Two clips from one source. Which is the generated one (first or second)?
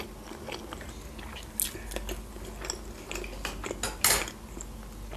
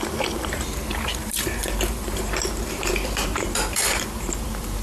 second